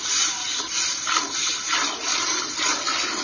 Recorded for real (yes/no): yes